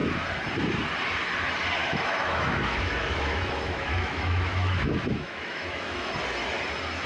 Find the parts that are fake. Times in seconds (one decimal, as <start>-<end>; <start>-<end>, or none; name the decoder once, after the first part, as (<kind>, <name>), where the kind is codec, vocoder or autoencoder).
1.8-6.1 (autoencoder, DAC-VAE)